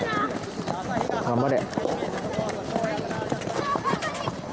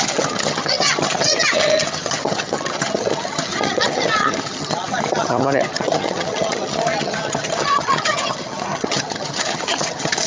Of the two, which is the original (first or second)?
first